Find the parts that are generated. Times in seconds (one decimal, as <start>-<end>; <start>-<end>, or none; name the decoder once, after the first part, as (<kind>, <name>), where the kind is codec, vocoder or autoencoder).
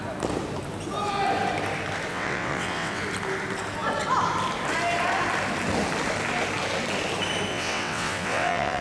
2.1-3.0 (vocoder, WaveNeXt); 7.5-8.8